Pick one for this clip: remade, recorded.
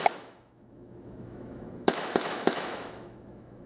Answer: remade